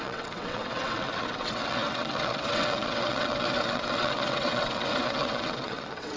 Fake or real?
fake